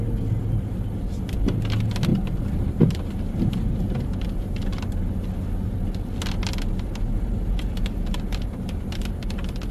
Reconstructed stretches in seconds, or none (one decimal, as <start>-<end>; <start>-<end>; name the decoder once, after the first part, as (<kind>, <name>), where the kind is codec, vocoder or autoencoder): 2.1-4.8 (vocoder, BigVGAN v2)